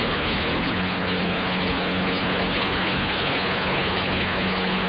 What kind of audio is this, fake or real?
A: fake